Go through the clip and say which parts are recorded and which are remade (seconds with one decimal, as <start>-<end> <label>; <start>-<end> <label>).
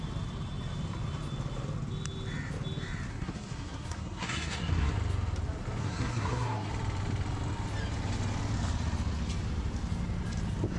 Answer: 0.0-3.1 recorded; 3.1-4.9 remade; 4.9-5.8 recorded; 5.8-6.7 remade; 6.7-10.8 recorded